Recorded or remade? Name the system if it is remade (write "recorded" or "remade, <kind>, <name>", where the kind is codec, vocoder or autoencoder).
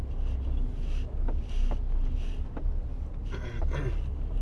recorded